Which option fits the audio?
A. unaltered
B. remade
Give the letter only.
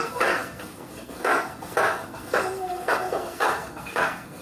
B